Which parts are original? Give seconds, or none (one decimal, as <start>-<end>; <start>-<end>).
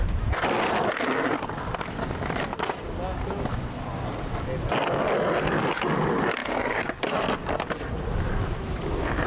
0.0-9.3